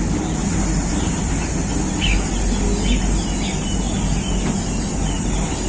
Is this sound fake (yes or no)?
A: no